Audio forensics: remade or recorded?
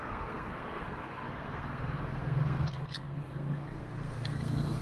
remade